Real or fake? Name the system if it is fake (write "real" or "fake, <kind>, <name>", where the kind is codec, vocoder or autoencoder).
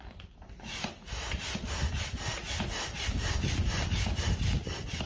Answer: real